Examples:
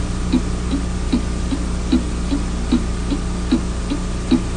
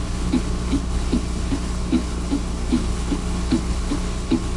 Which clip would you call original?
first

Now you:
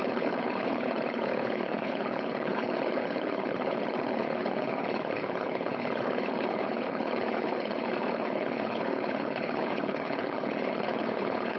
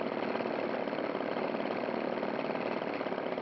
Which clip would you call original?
second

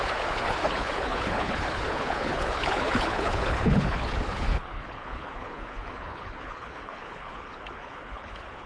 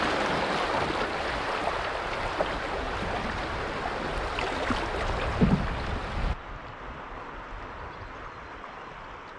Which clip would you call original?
second